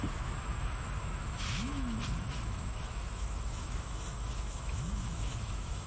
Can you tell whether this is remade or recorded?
remade